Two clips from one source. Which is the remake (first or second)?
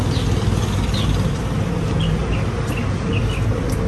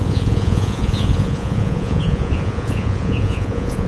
second